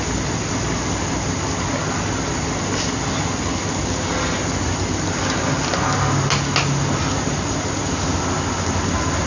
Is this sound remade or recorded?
recorded